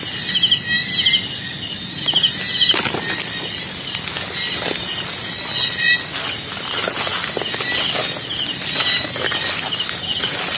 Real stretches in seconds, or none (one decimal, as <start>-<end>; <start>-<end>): 0.0-10.6